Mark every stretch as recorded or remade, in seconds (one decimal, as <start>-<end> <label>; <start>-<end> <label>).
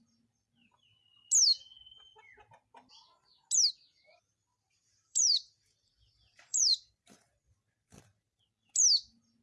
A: 0.0-4.5 recorded; 4.5-8.4 remade; 8.4-9.4 recorded